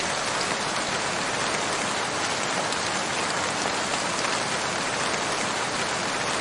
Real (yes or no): yes